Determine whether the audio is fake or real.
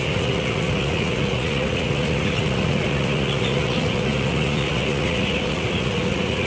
fake